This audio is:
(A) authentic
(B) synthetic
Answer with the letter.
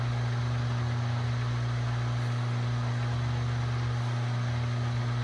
A